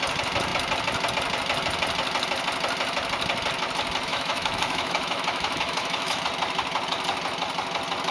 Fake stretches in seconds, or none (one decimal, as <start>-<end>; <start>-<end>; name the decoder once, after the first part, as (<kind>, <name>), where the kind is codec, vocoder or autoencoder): 4.1-6.2 (autoencoder, DAC-VAE)